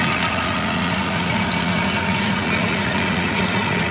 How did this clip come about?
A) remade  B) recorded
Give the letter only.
A